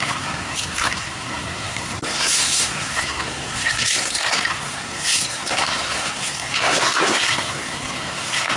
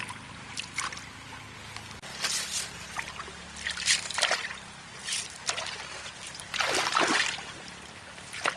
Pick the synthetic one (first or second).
first